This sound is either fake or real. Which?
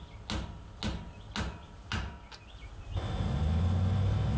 real